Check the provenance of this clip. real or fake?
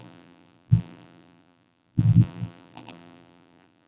fake